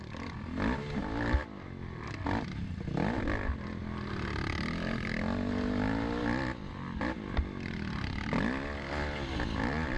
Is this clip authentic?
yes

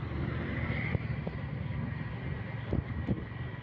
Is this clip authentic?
yes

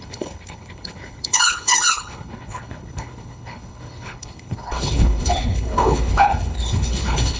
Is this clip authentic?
no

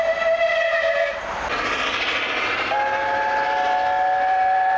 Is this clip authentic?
yes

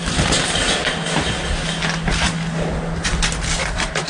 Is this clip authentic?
yes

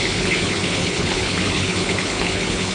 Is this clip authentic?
no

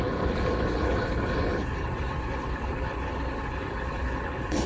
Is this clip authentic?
no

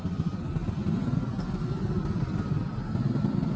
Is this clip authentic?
yes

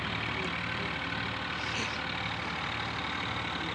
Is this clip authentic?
yes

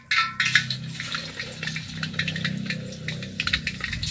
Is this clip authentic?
yes